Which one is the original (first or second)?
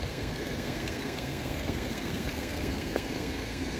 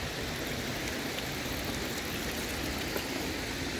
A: second